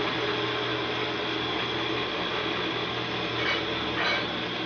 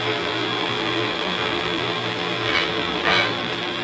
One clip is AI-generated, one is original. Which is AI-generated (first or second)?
second